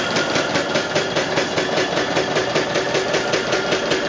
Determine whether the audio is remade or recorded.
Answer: recorded